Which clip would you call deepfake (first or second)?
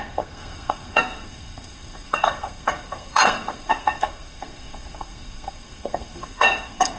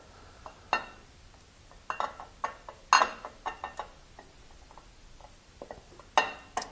first